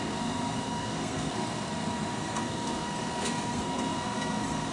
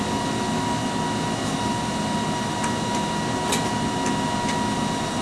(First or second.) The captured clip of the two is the second